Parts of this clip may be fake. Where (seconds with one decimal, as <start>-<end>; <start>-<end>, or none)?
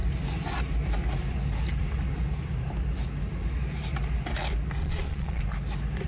4.8-5.4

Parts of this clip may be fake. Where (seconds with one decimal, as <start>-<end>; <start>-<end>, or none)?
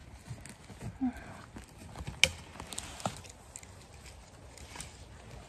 none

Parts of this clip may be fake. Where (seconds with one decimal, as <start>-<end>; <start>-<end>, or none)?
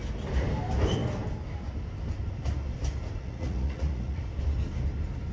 3.2-4.2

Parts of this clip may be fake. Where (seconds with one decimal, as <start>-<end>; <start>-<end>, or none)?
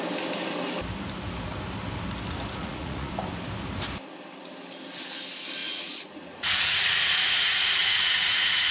2.6-3.1; 5.6-8.7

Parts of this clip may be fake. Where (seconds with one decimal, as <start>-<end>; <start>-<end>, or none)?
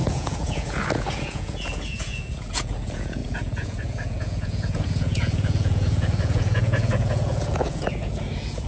0.0-8.7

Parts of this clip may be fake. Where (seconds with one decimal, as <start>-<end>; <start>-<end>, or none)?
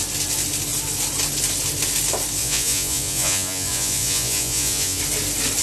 2.4-5.0